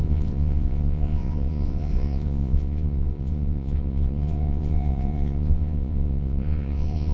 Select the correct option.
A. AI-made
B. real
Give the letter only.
A